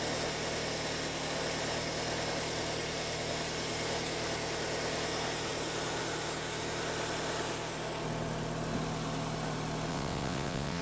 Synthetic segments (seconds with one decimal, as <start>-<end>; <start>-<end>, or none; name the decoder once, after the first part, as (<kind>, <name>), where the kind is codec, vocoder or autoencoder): 9.9-10.8 (vocoder, WaveNeXt)